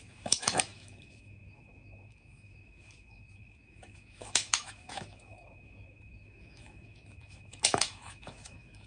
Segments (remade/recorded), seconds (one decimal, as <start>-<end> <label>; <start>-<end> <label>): 0.0-8.9 remade